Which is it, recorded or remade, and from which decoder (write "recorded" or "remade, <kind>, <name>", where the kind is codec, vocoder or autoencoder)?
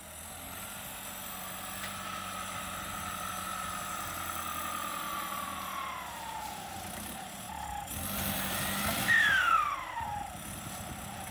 recorded